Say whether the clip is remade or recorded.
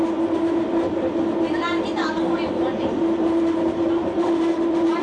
recorded